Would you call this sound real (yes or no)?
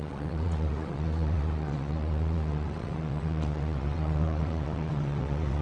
no